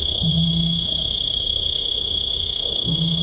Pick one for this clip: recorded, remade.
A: remade